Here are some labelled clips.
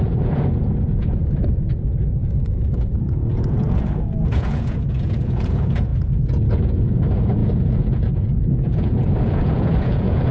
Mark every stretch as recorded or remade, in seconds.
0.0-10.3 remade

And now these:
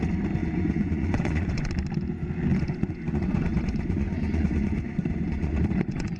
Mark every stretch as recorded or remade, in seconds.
0.0-0.4 recorded; 0.4-1.7 remade; 1.7-2.5 recorded; 2.5-6.2 remade

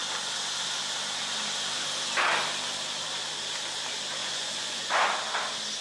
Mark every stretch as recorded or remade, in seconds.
0.0-4.2 recorded; 4.2-5.0 remade; 5.0-5.8 recorded